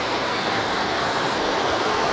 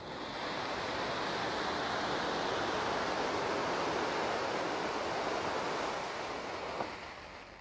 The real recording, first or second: second